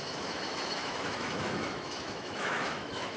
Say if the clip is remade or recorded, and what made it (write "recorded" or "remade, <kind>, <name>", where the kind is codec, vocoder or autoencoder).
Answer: remade, autoencoder, DAC-VAE